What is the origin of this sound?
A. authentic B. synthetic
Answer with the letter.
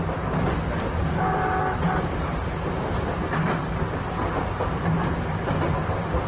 A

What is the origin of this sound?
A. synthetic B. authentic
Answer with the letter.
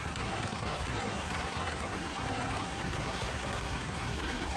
A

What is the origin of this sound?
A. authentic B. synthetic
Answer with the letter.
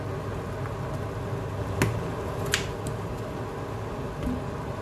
A